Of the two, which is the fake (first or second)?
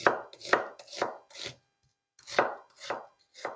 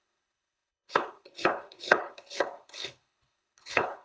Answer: second